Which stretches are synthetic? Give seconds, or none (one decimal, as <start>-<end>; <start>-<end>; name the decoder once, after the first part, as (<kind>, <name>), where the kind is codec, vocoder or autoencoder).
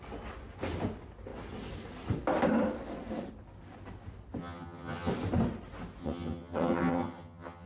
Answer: 4.4-5.1 (vocoder, HiFi-GAN); 6.0-7.7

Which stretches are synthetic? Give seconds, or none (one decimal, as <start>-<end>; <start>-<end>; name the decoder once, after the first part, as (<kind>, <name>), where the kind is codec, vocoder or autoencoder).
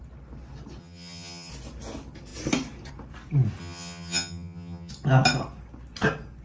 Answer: 0.8-1.5 (vocoder, HiFi-GAN); 3.6-4.9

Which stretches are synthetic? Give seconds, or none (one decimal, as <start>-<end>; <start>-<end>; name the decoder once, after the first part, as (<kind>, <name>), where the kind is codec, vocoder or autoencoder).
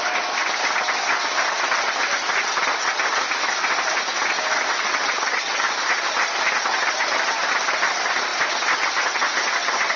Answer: 4.9-5.7 (vocoder, HiFi-GAN)